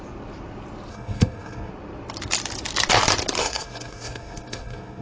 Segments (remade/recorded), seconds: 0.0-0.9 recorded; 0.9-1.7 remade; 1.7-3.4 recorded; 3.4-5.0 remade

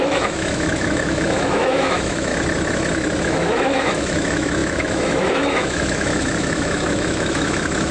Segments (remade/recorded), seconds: 0.0-2.3 remade; 2.3-3.2 recorded; 3.2-7.9 remade

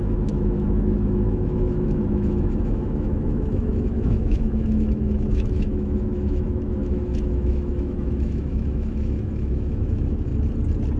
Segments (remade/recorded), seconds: 0.0-10.3 remade; 10.3-11.0 recorded

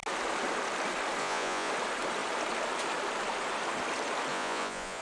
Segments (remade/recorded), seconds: 0.0-1.2 recorded; 1.2-1.7 remade; 1.7-4.3 recorded; 4.3-5.0 remade

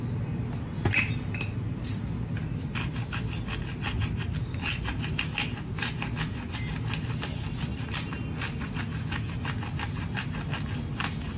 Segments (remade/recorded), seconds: 0.0-11.4 recorded

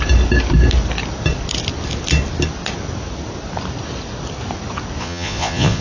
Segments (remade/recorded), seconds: 0.0-5.0 recorded; 5.0-5.8 remade

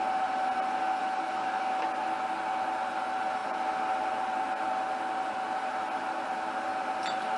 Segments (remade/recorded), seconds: 0.0-1.0 recorded; 1.0-1.6 remade; 1.6-7.4 recorded